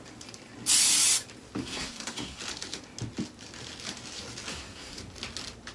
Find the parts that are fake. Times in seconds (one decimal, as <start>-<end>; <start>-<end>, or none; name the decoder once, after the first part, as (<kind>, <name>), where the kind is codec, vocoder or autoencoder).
1.6-2.4 (codec, SNAC); 4.5-5.0